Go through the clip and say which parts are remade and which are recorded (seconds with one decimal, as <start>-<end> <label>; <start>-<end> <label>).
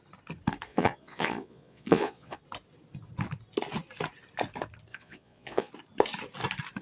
0.0-0.7 recorded; 0.7-2.4 remade; 2.4-4.9 recorded; 4.9-5.7 remade; 5.7-6.8 recorded